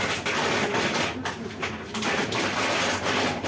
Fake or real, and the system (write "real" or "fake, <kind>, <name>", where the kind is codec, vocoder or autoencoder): real